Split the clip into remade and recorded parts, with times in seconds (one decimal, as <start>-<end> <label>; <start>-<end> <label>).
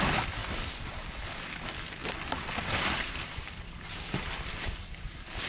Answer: 0.0-2.0 recorded; 2.0-4.5 remade; 4.5-5.5 recorded